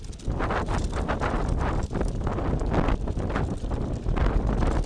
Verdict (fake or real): real